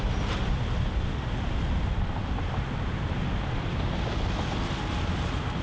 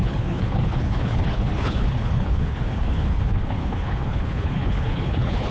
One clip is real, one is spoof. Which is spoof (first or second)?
second